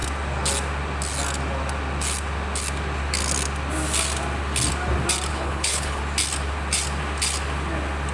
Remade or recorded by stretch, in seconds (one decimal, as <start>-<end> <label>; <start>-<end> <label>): 0.0-5.3 recorded; 5.3-6.0 remade; 6.0-8.1 recorded

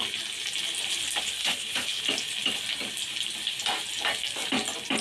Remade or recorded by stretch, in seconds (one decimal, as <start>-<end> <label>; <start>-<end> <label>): 0.0-1.4 recorded; 1.4-2.0 remade; 2.0-5.0 recorded

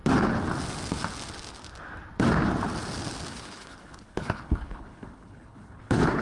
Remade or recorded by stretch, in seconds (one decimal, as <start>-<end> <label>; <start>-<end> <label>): 0.0-3.3 recorded; 3.3-6.2 remade